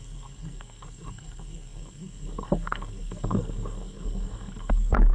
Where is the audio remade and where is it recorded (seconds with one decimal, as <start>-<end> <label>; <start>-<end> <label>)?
0.0-5.1 remade